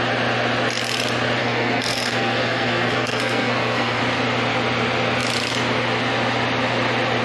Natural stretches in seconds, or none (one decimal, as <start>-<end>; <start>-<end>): 0.0-1.4; 4.0-7.2